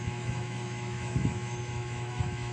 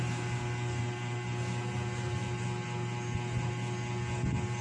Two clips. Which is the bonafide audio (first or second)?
second